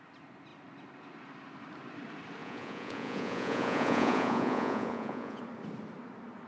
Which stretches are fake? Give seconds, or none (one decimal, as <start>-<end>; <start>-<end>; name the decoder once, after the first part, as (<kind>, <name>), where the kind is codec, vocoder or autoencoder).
2.4-5.4 (vocoder, Vocos)